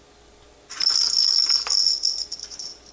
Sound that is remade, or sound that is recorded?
recorded